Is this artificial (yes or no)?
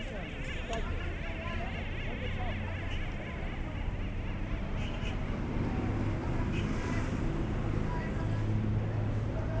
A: no